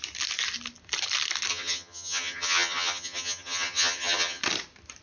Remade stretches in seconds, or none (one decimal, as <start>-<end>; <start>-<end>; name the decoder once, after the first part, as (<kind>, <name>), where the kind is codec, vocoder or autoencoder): 1.5-4.4 (vocoder, HiFi-GAN)

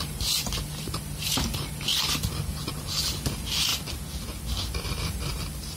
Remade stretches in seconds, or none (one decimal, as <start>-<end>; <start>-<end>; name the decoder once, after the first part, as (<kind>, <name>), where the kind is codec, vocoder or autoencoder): 0.0-1.9 (vocoder, BigVGAN v2); 2.7-3.7; 4.8-5.8

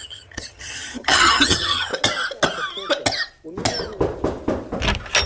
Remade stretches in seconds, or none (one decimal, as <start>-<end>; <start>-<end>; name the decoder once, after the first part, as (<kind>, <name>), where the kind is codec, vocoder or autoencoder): 0.0-1.9 (vocoder, HiFi-GAN)

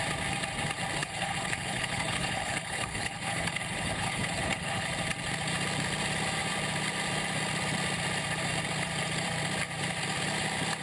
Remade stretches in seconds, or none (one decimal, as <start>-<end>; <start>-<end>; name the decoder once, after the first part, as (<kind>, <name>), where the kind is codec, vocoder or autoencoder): 1.0-4.9 (codec, HILCodec)

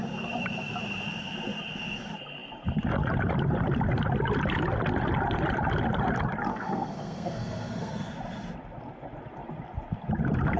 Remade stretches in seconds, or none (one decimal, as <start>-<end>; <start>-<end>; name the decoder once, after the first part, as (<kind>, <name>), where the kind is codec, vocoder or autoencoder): 6.5-8.1 (codec, SNAC)

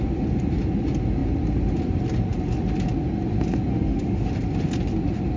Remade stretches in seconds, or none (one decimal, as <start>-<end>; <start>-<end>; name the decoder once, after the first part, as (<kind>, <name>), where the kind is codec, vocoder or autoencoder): 3.7-4.3 (autoencoder, DAC-VAE)

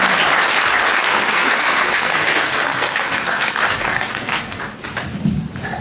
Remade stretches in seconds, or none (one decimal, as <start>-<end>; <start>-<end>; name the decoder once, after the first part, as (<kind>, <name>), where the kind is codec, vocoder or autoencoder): 1.1-4.6 (codec, SNAC)

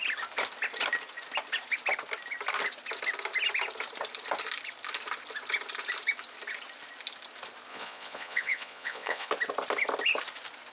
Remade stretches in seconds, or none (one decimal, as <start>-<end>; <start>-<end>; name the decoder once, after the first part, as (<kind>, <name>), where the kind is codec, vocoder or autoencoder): 7.7-9.3 (vocoder, Vocos)